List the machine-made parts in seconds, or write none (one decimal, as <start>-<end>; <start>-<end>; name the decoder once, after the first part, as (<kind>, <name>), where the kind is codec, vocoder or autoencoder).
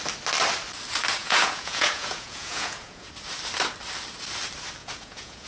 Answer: 1.2-3.1 (vocoder, Vocos); 4.8-5.5